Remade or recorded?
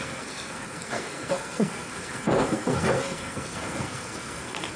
remade